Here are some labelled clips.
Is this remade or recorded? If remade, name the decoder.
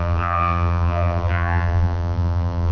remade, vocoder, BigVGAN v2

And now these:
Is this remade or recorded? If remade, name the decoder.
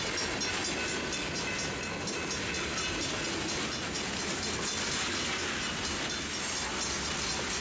recorded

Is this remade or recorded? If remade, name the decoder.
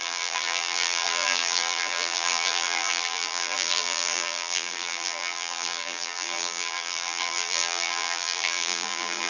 remade, vocoder, BigVGAN v2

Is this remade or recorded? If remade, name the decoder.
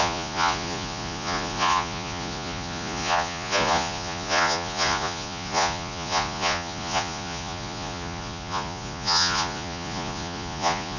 remade, vocoder, Vocos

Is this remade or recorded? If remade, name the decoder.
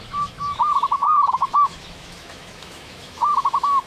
remade, autoencoder, DAC-VAE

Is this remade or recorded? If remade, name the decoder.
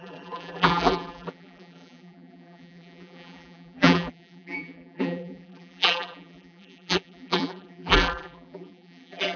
remade, vocoder, BigVGAN v2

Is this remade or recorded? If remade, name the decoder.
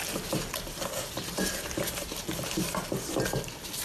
recorded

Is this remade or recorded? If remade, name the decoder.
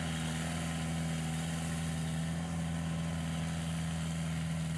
recorded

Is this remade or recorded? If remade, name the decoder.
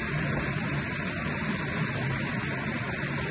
recorded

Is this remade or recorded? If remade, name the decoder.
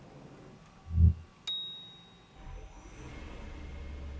recorded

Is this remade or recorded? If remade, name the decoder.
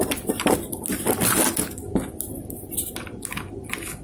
recorded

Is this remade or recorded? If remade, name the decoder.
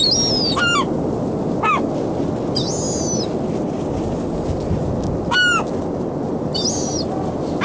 recorded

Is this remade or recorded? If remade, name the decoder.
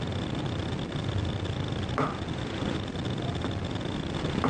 recorded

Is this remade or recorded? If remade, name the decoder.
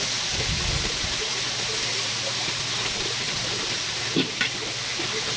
recorded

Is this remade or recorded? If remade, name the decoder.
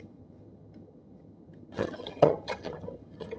remade, vocoder, HiFi-GAN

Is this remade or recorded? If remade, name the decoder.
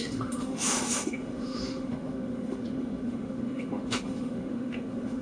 remade, autoencoder, DAC-VAE